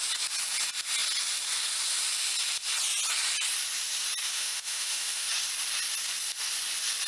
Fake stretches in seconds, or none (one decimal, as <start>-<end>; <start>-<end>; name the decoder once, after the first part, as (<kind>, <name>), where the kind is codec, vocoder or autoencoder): 4.2-5.3 (autoencoder, DAC-VAE)